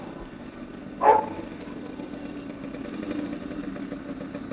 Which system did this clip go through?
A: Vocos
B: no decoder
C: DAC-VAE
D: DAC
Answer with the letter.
B